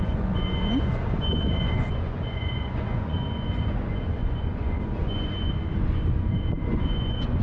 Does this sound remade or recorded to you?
remade